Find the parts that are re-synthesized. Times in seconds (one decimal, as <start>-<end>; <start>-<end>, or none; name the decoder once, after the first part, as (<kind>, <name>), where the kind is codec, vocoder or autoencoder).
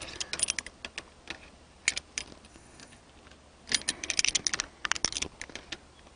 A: 2.5-3.0 (codec, SNAC)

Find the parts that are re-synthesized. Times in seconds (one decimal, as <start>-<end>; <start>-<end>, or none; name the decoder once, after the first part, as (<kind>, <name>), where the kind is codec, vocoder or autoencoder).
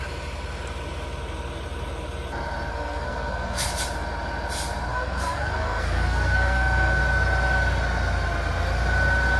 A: 2.7-3.7 (codec, SNAC); 4.9-7.0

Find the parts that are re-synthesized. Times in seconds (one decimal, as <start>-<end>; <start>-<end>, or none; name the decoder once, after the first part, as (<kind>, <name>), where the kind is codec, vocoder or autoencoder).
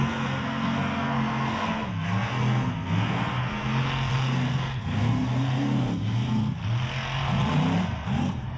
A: 0.0-6.6 (codec, SNAC); 7.8-8.6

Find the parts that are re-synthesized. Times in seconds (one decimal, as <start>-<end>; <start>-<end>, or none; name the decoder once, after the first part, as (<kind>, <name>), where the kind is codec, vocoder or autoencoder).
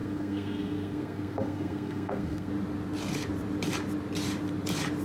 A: 0.0-2.5 (codec, SNAC)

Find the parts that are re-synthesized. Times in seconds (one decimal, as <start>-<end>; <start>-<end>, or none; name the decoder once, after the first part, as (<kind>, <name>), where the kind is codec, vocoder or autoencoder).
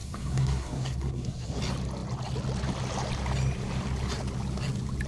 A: 0.0-1.6 (codec, SNAC)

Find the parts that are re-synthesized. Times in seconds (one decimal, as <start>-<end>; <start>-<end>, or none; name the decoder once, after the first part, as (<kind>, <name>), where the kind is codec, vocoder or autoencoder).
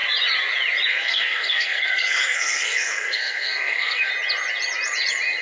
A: 0.9-4.1 (codec, SNAC)